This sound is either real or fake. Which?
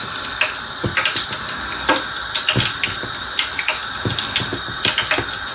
real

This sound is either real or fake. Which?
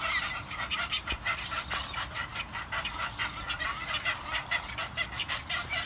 fake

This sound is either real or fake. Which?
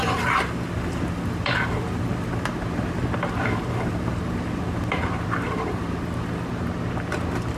fake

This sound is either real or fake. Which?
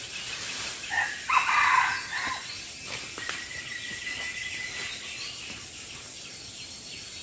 real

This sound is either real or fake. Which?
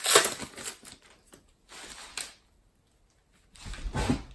real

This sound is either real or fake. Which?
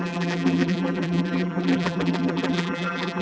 fake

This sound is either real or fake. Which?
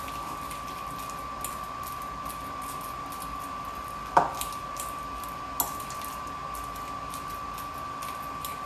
real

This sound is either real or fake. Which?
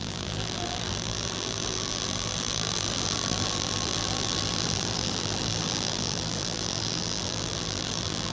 fake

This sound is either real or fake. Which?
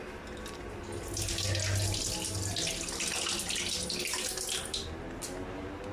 real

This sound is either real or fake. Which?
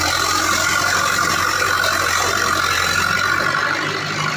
real